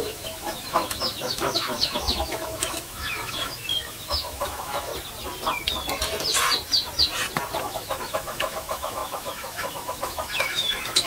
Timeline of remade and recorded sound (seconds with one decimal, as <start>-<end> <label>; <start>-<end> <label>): 0.0-4.9 remade; 4.9-7.6 recorded; 7.6-11.1 remade